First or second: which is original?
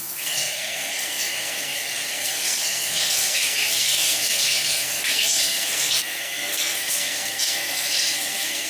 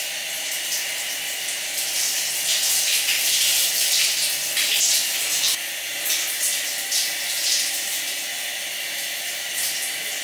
second